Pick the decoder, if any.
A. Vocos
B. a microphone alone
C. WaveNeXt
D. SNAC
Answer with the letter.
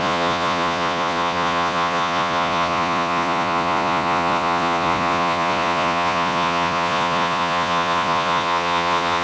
A